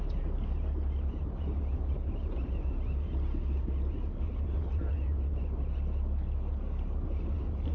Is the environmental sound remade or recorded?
recorded